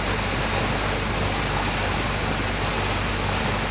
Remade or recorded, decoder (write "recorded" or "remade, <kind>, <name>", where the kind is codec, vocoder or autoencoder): recorded